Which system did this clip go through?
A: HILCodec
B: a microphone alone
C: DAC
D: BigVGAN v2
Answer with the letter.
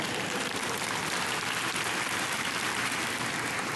B